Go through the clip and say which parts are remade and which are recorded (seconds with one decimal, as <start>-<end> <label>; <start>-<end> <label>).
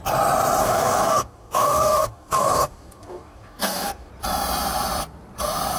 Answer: 0.0-0.6 recorded; 0.6-4.1 remade; 4.1-5.8 recorded